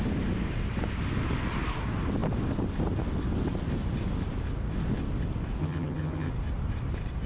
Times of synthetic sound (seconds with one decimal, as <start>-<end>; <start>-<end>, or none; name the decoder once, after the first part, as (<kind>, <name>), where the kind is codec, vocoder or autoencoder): 5.6-6.3 (vocoder, HiFi-GAN)